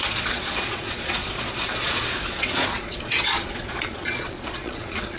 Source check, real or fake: fake